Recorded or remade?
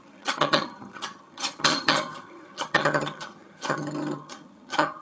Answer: remade